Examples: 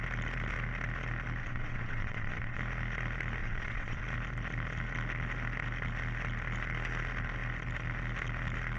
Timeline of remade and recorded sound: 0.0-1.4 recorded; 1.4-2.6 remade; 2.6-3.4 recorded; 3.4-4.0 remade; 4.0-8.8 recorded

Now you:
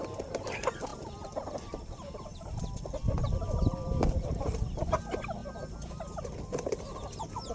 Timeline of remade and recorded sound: 0.0-5.4 recorded; 5.4-6.8 remade; 6.8-7.5 recorded

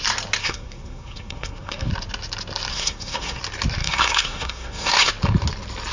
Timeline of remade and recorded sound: 0.0-0.4 recorded; 0.4-1.9 remade; 1.9-2.7 recorded; 2.7-3.4 remade; 3.4-3.8 recorded; 3.8-5.1 remade; 5.1-5.9 recorded